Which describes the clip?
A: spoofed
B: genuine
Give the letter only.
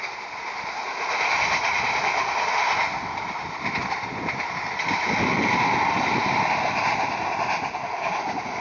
B